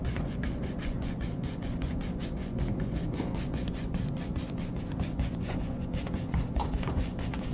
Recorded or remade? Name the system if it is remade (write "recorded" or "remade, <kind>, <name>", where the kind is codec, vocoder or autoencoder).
remade, vocoder, Vocos